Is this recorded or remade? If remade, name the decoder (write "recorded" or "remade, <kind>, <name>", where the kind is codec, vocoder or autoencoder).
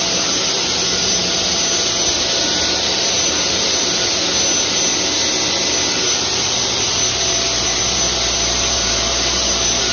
recorded